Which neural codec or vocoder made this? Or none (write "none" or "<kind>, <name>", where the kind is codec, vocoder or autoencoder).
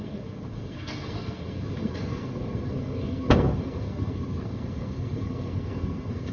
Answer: codec, SNAC